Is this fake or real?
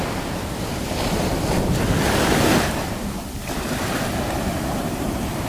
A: real